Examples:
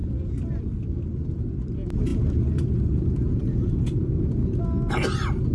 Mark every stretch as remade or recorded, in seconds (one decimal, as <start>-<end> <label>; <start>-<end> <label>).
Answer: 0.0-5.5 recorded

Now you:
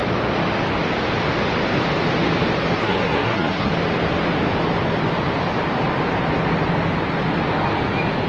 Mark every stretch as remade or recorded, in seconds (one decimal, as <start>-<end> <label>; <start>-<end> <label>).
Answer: 0.0-2.8 recorded; 2.8-3.7 remade; 3.7-8.3 recorded

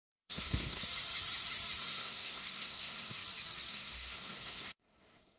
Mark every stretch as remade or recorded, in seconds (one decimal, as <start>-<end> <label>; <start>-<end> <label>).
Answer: 0.0-0.8 remade; 0.8-1.8 recorded; 1.8-3.2 remade; 3.2-3.7 recorded; 3.7-5.4 remade

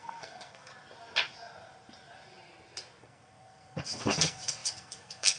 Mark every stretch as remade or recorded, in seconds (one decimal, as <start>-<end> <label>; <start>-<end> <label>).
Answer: 0.0-0.7 remade; 0.7-3.0 recorded; 3.0-5.4 remade

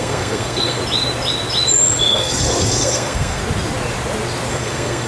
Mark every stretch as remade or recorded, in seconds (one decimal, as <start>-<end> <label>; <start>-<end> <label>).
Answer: 0.0-0.8 remade; 0.8-2.1 recorded; 2.1-3.4 remade; 3.4-4.5 recorded; 4.5-5.1 remade

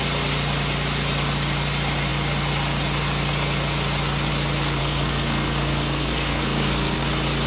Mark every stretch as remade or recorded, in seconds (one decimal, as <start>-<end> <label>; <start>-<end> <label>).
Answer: 0.0-4.8 recorded; 4.8-7.1 remade; 7.1-7.5 recorded

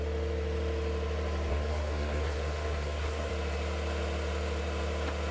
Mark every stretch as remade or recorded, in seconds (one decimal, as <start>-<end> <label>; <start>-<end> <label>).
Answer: 0.0-1.5 recorded; 1.5-3.3 remade; 3.3-5.3 recorded